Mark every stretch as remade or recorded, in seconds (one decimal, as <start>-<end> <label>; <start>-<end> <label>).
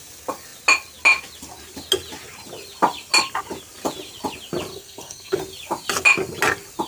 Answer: 0.0-4.7 recorded; 4.7-5.4 remade; 5.4-6.9 recorded